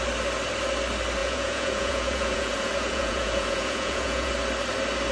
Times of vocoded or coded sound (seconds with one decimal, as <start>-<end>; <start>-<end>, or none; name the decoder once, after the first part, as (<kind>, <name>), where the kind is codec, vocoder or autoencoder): 1.2-4.3 (vocoder, Vocos)